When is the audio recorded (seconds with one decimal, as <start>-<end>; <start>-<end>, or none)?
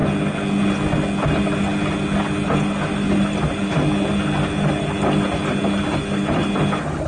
0.0-7.1